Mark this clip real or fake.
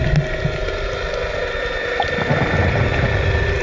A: real